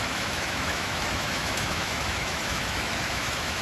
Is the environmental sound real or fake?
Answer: fake